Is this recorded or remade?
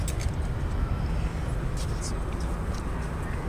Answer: recorded